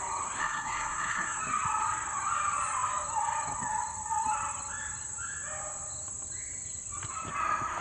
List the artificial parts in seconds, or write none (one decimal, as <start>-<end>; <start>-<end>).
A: 0.4-1.4